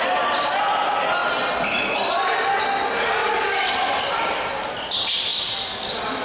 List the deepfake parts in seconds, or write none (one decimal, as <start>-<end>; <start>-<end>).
none